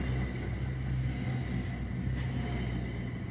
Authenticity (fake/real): real